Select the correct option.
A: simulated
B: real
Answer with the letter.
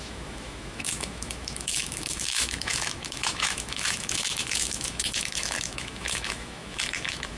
A